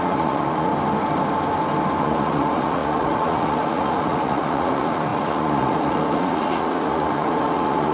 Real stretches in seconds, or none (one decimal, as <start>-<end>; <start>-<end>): 0.7-2.0